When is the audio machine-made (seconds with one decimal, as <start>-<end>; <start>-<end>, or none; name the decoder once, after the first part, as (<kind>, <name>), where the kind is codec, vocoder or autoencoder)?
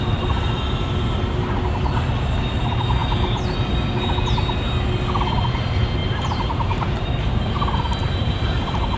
6.0-7.0 (vocoder, BigVGAN v2); 8.0-9.0